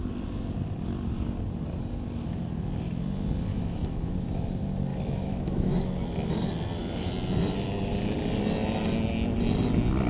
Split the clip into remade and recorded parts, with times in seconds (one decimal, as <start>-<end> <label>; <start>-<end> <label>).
0.0-3.5 recorded; 3.5-4.4 remade; 4.4-4.9 recorded; 4.9-5.7 remade; 5.7-10.1 recorded